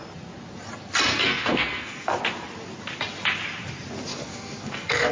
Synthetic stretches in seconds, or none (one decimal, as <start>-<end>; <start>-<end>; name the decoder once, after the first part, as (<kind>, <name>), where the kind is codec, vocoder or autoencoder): 1.1-2.2 (codec, SNAC); 4.1-5.1